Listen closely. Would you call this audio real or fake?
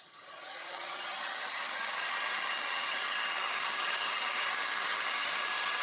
fake